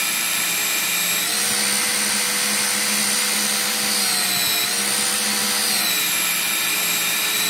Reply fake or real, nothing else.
real